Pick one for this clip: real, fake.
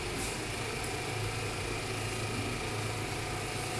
real